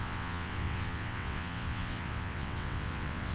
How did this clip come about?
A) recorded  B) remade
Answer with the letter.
B